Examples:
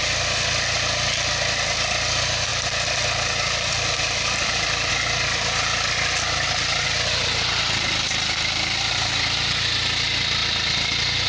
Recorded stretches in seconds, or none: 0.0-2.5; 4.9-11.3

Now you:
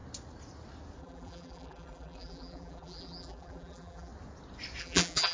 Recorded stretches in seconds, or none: 0.0-1.0; 4.1-4.8

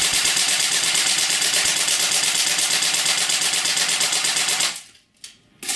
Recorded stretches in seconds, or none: 1.7-5.8